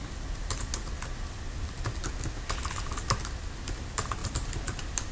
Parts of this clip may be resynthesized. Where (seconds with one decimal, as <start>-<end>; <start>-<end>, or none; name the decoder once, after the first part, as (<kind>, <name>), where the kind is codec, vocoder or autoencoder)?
4.2-5.1 (vocoder, BigVGAN v2)